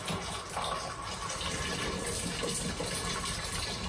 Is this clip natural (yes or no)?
yes